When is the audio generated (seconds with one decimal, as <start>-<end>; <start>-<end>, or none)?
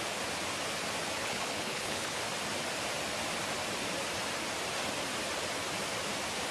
1.2-2.2